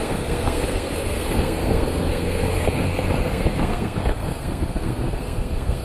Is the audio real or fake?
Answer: fake